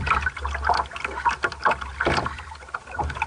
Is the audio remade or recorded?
recorded